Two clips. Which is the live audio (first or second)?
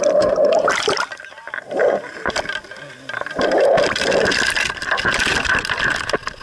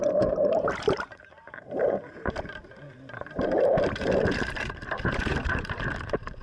first